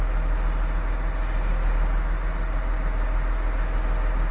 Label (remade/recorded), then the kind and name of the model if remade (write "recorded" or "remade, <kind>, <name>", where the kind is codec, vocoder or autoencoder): recorded